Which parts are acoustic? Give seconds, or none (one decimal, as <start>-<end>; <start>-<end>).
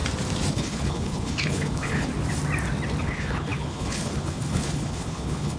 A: 0.0-0.5; 2.1-3.0